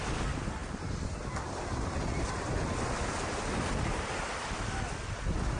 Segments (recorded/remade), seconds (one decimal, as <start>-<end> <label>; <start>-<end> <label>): 0.0-5.6 recorded